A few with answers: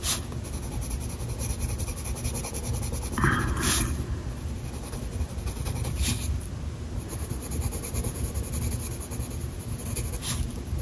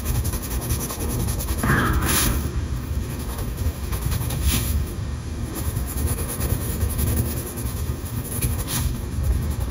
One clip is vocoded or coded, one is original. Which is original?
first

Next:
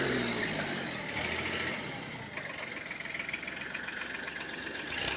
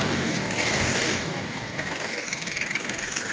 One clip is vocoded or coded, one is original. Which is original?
first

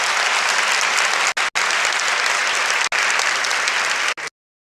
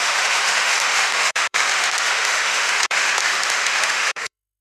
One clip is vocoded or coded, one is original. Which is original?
first